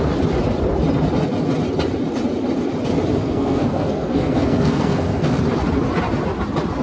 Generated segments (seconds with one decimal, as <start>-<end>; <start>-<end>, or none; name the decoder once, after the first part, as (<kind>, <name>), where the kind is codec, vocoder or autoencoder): 3.2-5.4 (codec, SNAC)